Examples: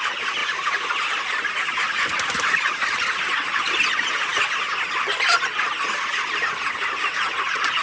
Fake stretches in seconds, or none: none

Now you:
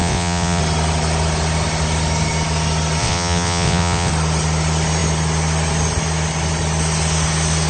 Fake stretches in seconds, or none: 0.0-0.6 (vocoder, WaveNeXt); 3.0-4.1

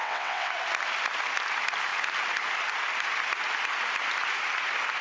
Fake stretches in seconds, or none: 0.0-0.5 (vocoder, WaveNeXt)

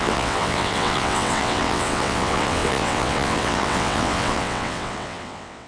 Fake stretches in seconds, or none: 0.0-5.7 (vocoder, WaveNeXt)

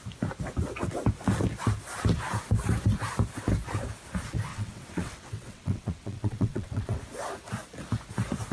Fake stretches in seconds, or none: 4.5-7.0 (vocoder, WaveNeXt)

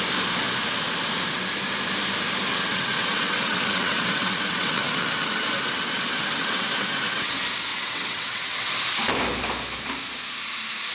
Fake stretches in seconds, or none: 2.5-7.3 (vocoder, WaveNeXt); 7.7-8.7